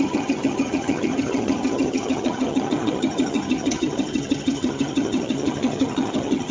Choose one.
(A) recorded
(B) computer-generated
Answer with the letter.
B